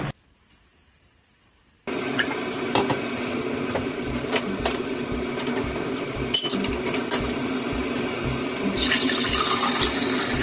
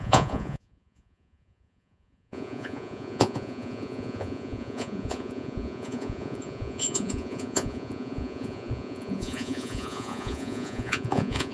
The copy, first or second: second